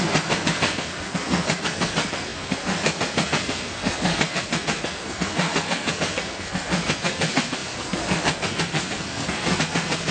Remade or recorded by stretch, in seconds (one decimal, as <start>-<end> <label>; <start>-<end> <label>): 0.0-10.1 remade